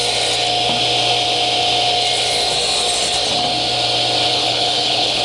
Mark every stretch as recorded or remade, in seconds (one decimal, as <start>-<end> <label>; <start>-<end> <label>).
0.0-4.3 recorded; 4.3-5.2 remade